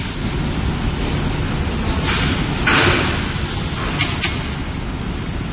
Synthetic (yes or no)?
no